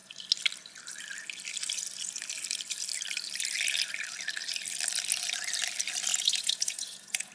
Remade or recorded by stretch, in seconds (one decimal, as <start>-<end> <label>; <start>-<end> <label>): 0.0-6.1 recorded; 6.1-7.3 remade